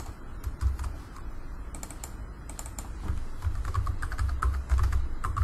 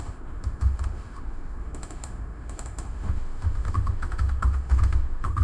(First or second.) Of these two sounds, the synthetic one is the second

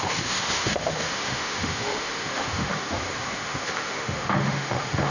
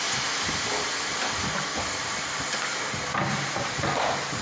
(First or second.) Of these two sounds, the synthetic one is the first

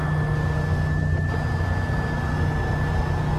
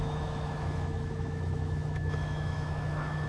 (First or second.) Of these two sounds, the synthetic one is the second